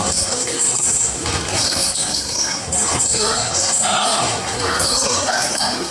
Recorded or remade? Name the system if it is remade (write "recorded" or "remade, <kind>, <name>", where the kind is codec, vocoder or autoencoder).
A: remade, codec, SNAC